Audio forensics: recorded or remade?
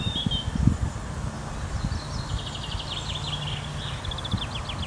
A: recorded